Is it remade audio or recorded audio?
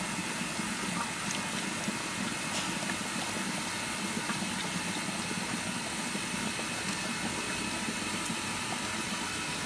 recorded